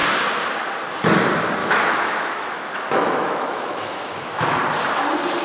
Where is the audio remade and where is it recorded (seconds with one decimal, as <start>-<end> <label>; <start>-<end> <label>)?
0.0-1.6 recorded; 1.6-4.6 remade; 4.6-5.4 recorded